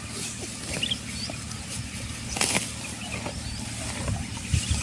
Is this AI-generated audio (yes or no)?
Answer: no